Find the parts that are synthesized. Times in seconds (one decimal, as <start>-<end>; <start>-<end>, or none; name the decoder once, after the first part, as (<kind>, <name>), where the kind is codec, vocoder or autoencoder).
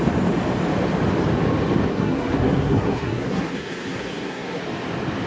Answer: 1.9-4.6 (codec, SNAC)